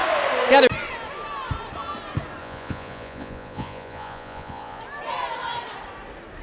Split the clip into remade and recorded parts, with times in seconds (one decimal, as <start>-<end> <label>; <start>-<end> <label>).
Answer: 0.0-2.4 recorded; 2.4-4.8 remade; 4.8-6.4 recorded